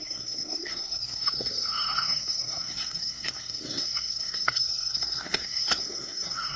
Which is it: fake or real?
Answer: fake